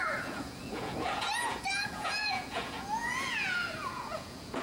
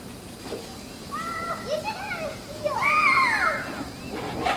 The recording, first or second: second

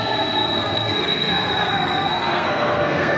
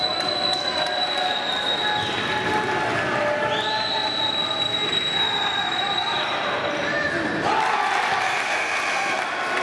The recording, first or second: second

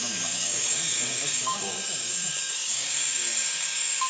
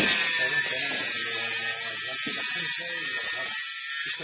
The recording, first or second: second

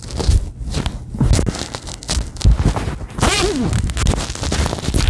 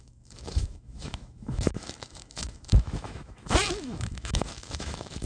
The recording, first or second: first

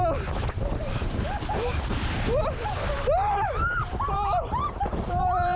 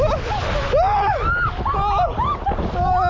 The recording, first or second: second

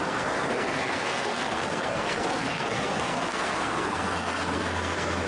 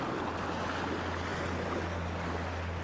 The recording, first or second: second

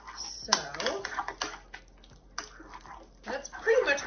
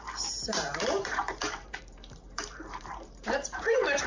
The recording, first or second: first